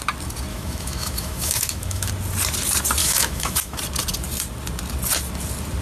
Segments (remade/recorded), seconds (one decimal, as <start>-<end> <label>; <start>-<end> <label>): 0.0-0.5 recorded; 0.5-2.1 remade; 2.1-3.0 recorded; 3.0-3.8 remade; 3.8-5.8 recorded